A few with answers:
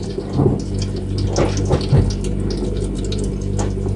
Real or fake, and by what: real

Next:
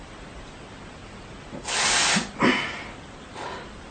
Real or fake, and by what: real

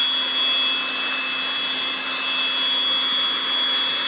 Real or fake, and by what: real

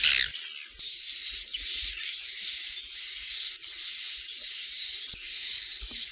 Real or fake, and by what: real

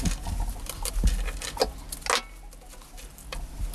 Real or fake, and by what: real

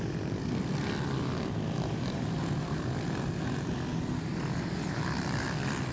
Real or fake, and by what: real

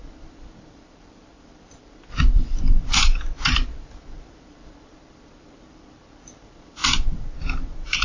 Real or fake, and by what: fake, vocoder, BigVGAN v2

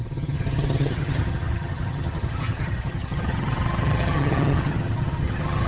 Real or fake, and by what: fake, vocoder, HiFi-GAN